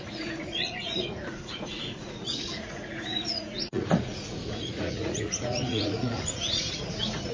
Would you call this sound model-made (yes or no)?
yes